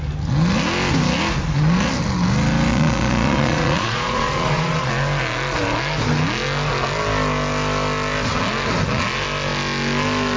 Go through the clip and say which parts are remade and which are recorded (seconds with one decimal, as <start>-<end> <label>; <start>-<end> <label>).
0.0-2.7 recorded; 2.7-4.9 remade; 4.9-10.4 recorded